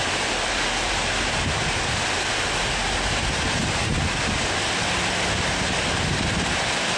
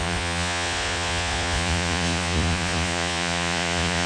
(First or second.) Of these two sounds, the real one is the first